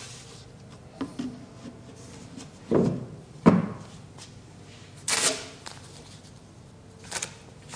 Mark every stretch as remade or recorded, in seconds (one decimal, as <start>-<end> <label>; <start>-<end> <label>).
0.0-7.8 recorded